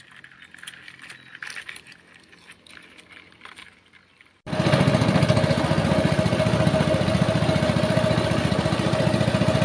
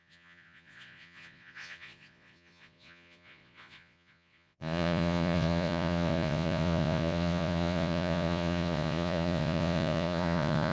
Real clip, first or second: first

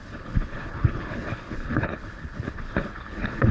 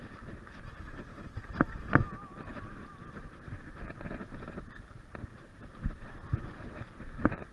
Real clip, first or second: second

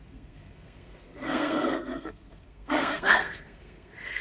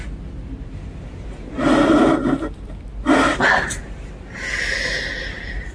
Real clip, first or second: second